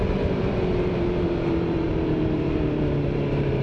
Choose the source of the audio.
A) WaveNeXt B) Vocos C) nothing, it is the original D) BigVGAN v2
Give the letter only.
D